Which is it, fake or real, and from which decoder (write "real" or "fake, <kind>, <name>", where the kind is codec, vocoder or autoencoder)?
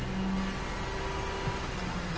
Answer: real